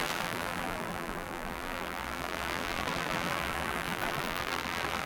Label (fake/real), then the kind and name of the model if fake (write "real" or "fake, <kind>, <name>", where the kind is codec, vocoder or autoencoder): fake, vocoder, BigVGAN v2